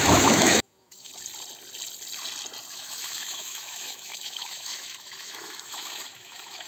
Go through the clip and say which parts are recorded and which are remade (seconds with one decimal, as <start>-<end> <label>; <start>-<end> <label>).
0.0-1.1 remade; 1.1-2.7 recorded; 2.7-6.7 remade